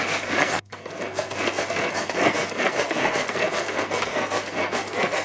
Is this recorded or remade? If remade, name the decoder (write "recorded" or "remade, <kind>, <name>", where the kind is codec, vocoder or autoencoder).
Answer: remade, codec, SNAC